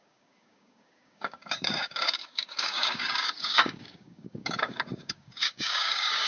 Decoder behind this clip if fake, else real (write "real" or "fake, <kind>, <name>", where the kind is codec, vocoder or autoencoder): fake, codec, DAC